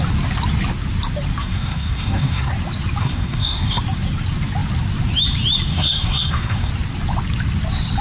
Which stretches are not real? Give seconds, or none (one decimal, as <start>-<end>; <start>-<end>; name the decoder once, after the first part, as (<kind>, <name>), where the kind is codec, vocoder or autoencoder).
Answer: 1.4-2.5 (codec, SNAC); 3.0-3.8; 5.7-6.7